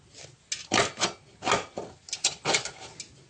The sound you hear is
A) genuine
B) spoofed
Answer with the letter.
A